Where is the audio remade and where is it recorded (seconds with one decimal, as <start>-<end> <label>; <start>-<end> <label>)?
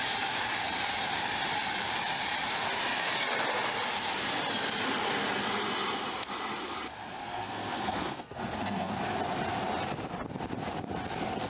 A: 0.0-7.2 recorded; 7.2-8.9 remade; 8.9-11.5 recorded